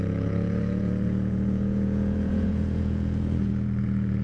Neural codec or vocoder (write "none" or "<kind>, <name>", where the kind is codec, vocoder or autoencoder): vocoder, Vocos